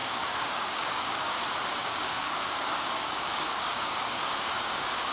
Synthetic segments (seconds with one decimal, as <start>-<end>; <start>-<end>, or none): 0.0-1.3; 1.8-5.1